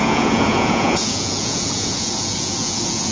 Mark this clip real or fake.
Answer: fake